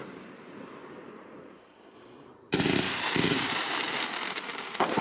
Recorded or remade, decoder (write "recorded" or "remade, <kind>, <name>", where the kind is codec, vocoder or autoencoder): remade, vocoder, BigVGAN v2